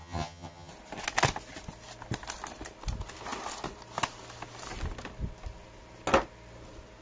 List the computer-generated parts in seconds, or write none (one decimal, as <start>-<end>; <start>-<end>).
0.0-0.7